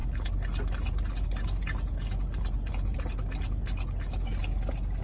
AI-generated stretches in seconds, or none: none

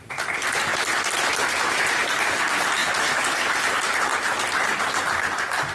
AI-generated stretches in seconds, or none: 2.8-3.6

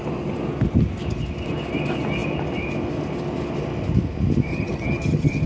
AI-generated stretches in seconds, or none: 4.5-5.5

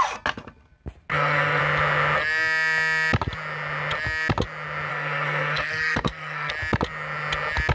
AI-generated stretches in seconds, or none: 1.1-1.6; 4.9-6.5

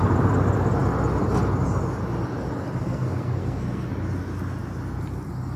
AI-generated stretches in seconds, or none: 2.8-3.9

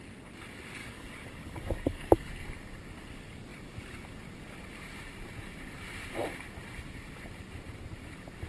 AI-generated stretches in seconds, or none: 0.8-2.3

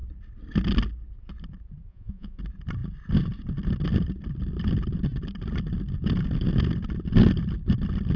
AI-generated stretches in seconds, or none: 1.9-2.4